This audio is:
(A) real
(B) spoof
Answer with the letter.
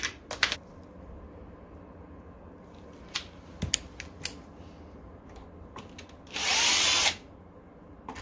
A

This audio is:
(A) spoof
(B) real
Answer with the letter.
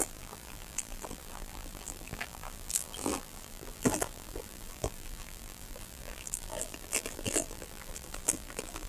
A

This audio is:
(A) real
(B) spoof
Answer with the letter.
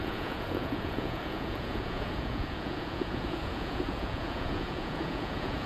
B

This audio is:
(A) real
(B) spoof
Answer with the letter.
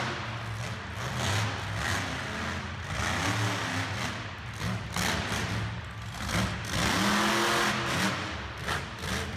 A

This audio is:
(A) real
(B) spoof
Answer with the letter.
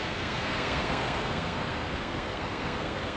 B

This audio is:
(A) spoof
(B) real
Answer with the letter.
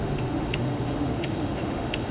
A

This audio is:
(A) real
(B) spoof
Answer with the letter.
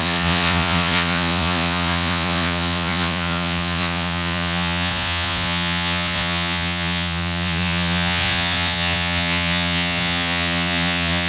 B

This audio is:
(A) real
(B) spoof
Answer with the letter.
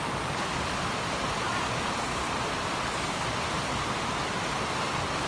A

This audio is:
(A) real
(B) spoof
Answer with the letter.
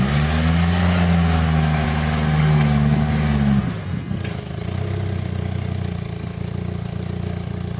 A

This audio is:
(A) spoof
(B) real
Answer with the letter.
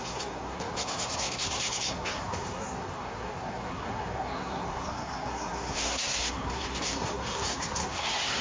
A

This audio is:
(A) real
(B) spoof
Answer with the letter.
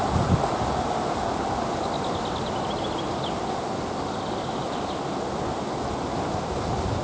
A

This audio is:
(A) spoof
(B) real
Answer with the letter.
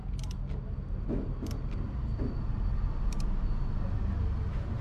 B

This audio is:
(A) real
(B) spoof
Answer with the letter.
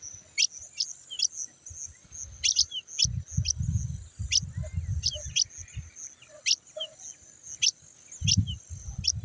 A